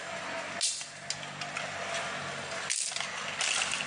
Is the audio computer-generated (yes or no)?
no